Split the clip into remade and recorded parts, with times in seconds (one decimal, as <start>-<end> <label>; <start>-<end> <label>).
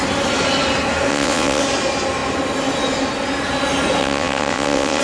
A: 0.0-1.1 recorded; 1.1-1.6 remade; 1.6-4.0 recorded; 4.0-5.0 remade